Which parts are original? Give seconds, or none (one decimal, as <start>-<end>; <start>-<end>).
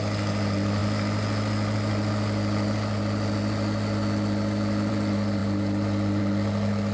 0.0-6.9